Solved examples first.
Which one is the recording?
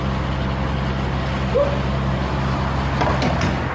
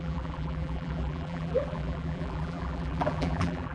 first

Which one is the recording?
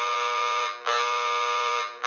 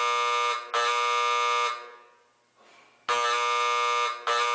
second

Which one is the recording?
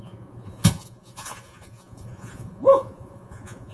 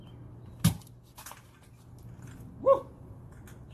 second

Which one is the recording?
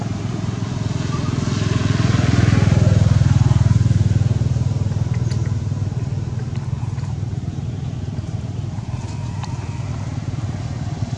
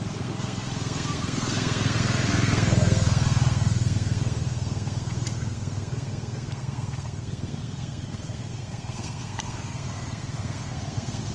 first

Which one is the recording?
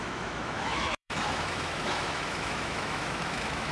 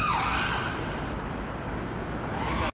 second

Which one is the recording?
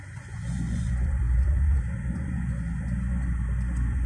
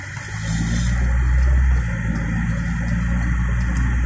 second